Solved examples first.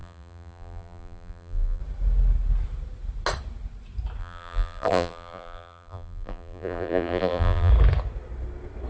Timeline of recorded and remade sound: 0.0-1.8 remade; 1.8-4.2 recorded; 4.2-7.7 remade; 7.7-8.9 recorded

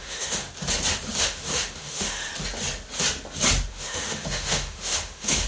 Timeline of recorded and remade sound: 0.0-0.5 remade; 0.5-1.2 recorded; 1.2-2.3 remade; 2.3-3.7 recorded; 3.7-5.5 remade

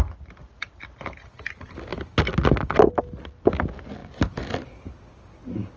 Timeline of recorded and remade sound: 0.0-5.8 recorded

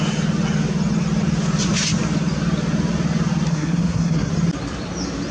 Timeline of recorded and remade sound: 0.0-3.5 recorded; 3.5-4.3 remade; 4.3-5.3 recorded